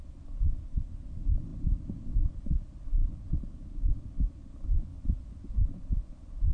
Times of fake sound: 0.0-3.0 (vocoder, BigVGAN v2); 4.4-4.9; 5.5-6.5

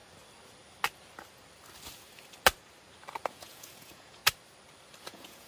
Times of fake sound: 3.3-4.2 (vocoder, Vocos); 5.0-5.5

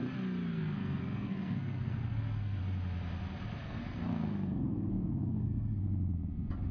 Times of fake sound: 0.5-2.6 (codec, SNAC); 3.6-5.8

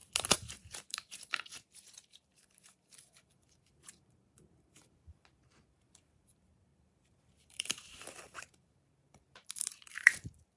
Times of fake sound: 0.0-10.6 (vocoder, BigVGAN v2)

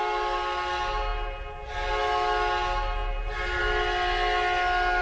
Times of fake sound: none

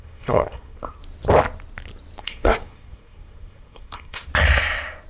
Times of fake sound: 0.0-1.0 (codec, SNAC); 2.2-4.3

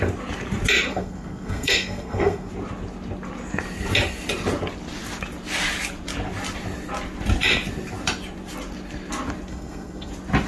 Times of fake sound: 0.9-2.5 (codec, SNAC); 9.5-10.1

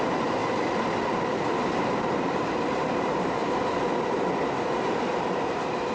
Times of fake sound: 0.0-0.4 (vocoder, BigVGAN v2); 1.8-3.4; 5.1-5.9